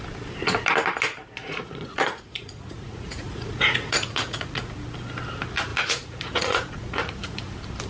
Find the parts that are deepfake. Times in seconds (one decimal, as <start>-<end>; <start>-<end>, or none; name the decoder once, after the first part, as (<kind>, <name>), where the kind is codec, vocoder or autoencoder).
1.4-4.7 (vocoder, Vocos); 5.7-7.4